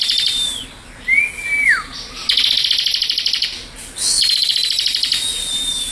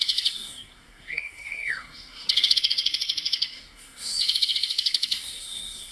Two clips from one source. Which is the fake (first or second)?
second